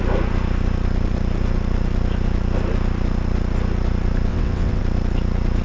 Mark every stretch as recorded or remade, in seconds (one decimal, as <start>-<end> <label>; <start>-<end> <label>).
0.0-4.3 recorded; 4.3-4.8 remade; 4.8-5.6 recorded